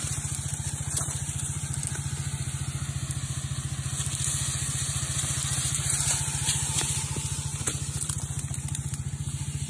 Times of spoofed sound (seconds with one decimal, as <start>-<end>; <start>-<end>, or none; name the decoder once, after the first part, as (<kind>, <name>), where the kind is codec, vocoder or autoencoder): 0.0-1.8 (vocoder, BigVGAN v2); 4.7-9.7